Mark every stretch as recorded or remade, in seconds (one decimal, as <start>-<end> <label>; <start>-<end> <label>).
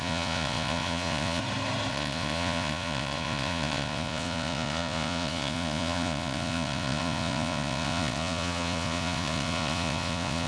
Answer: 0.0-1.4 remade; 1.4-1.9 recorded; 1.9-10.5 remade